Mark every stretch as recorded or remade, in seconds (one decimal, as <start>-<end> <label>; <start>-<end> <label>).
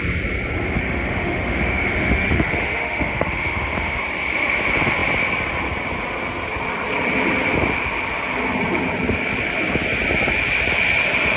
0.0-0.8 recorded; 0.8-4.0 remade; 4.0-11.4 recorded